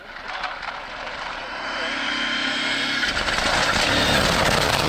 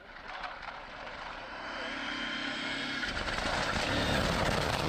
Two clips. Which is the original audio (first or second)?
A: first